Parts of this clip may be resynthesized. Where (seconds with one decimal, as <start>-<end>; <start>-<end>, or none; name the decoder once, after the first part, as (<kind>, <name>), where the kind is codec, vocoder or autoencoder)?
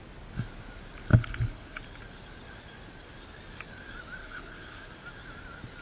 1.1-1.8 (codec, HILCodec); 4.2-4.9